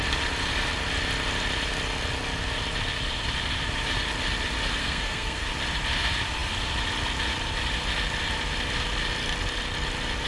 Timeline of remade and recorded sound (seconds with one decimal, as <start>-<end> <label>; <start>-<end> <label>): 0.0-4.8 recorded; 4.8-5.4 remade; 5.4-10.3 recorded